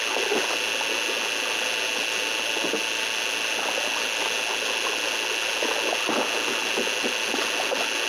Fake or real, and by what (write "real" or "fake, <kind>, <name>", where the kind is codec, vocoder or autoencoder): real